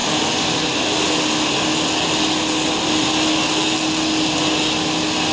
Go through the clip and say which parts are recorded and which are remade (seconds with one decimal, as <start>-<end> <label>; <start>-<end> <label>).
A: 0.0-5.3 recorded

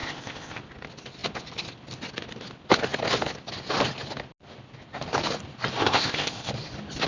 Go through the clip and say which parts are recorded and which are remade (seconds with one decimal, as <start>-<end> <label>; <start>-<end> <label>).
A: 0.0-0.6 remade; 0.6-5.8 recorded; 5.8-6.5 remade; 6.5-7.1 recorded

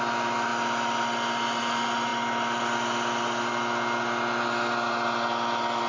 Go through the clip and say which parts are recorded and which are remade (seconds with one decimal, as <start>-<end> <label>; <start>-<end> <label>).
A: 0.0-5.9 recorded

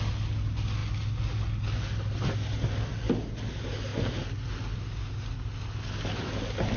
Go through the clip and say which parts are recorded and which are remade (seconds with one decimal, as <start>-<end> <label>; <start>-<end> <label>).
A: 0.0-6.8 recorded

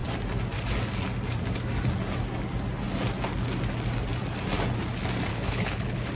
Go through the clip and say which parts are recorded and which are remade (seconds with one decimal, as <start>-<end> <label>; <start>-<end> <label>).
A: 0.0-5.3 recorded; 5.3-6.1 remade